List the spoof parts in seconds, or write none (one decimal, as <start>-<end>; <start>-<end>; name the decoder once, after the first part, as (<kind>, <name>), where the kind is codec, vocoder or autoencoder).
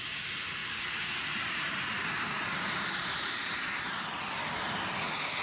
0.6-3.8 (vocoder, BigVGAN v2)